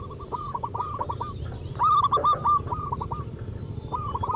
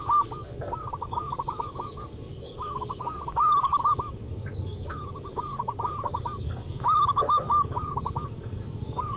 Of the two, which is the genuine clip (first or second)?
first